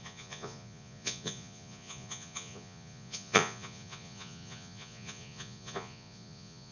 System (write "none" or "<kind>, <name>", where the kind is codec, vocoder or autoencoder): vocoder, Vocos